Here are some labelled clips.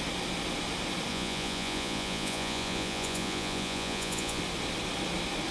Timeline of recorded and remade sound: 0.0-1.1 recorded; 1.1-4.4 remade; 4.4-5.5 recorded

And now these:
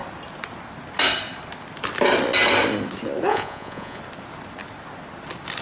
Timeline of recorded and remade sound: 0.0-3.3 recorded; 3.3-4.0 remade; 4.0-5.6 recorded

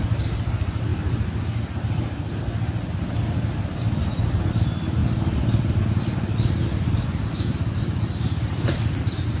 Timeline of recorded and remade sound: 0.0-9.4 recorded

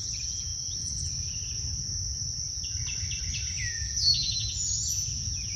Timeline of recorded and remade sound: 0.0-0.5 remade; 0.5-3.7 recorded; 3.7-5.6 remade

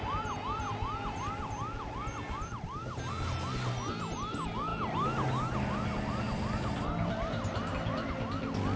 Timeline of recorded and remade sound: 0.0-8.8 recorded

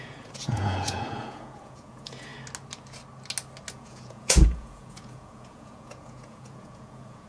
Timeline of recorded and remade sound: 0.0-2.3 remade; 2.3-3.7 recorded; 3.7-7.3 remade

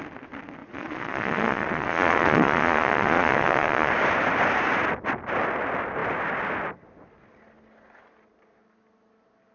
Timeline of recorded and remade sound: 0.0-0.6 recorded; 0.6-3.9 remade; 3.9-9.5 recorded

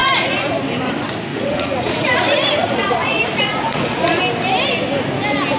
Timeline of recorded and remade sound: 0.0-0.5 remade; 0.5-1.3 recorded; 1.3-4.2 remade; 4.2-5.6 recorded